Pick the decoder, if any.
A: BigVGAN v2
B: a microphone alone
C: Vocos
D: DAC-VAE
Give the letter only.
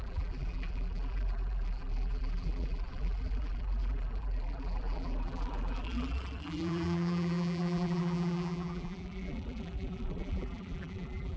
A